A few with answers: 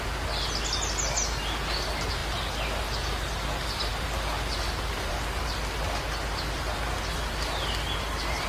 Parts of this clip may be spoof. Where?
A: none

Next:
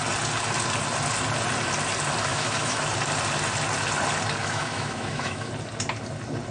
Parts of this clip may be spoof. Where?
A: 2.3-2.8 (autoencoder, DAC-VAE); 4.4-5.5

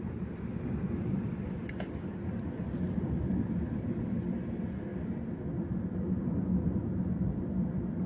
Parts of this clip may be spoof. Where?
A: none

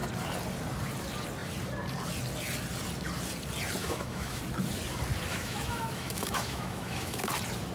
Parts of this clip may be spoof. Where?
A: 3.8-4.4 (autoencoder, DAC-VAE); 5.3-7.3

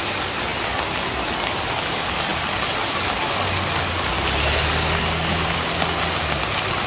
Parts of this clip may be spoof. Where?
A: none